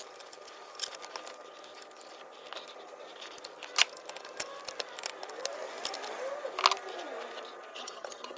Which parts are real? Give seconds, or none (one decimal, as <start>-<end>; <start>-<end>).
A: 0.0-7.7